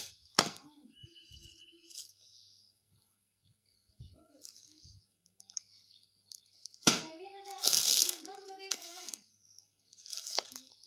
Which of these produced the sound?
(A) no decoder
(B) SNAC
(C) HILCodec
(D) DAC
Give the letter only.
B